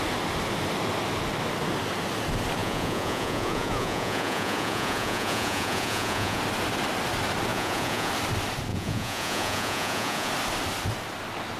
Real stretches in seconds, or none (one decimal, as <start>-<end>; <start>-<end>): 0.0-2.6; 6.4-7.5; 8.1-8.7; 10.3-11.6